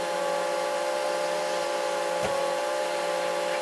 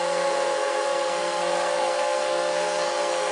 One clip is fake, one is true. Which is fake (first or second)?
second